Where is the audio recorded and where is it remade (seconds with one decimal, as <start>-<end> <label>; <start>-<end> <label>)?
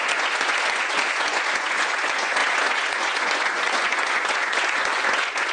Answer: 0.0-5.5 remade